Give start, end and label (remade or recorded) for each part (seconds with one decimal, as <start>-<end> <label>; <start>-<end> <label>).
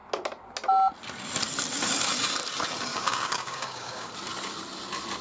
0.0-2.9 recorded; 2.9-4.1 remade; 4.1-5.2 recorded